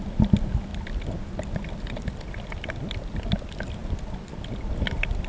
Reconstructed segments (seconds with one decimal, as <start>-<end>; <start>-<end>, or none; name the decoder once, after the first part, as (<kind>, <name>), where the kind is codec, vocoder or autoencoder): none